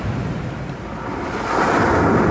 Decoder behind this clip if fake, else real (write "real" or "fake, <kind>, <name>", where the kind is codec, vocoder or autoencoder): real